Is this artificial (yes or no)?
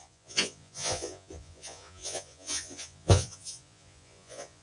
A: yes